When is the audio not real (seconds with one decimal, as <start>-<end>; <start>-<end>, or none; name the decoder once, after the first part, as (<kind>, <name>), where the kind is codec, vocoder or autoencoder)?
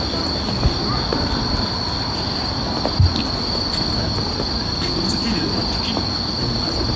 none